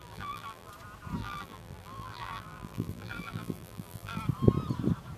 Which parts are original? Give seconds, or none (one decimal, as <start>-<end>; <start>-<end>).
0.7-1.2; 4.2-5.2